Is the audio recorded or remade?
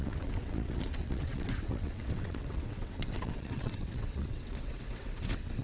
remade